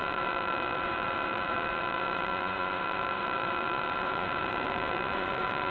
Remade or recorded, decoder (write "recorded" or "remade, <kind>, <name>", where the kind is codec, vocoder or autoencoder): remade, vocoder, Vocos